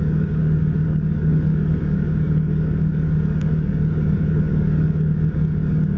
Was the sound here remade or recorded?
remade